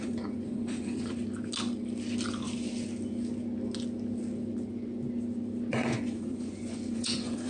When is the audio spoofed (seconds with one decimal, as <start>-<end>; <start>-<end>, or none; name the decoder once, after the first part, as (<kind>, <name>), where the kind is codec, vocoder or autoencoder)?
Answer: 0.0-1.2 (vocoder, Vocos); 5.7-7.5